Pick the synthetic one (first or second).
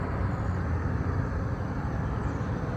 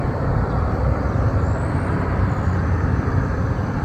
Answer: second